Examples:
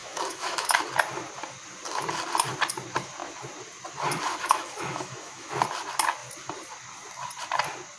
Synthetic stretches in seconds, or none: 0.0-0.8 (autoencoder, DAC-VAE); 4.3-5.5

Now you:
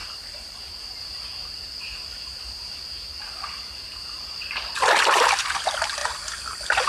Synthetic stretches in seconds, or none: 0.0-0.7 (vocoder, BigVGAN v2)

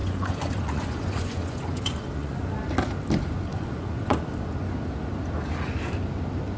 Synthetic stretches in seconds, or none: 0.0-2.4 (vocoder, Vocos); 3.5-4.3

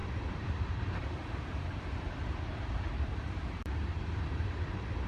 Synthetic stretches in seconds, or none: 0.0-3.1 (vocoder, BigVGAN v2); 3.6-5.1

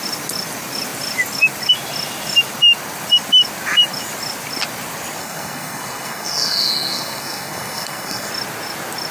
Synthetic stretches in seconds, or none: 5.2-8.3 (codec, SNAC)

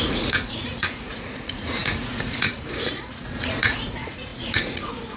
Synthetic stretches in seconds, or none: 0.0-5.2 (vocoder, Vocos)